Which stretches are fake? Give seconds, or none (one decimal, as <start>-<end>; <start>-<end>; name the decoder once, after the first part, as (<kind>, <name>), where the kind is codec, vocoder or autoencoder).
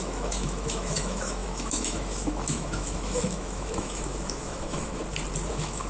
0.0-5.0 (autoencoder, DAC-VAE); 5.5-5.9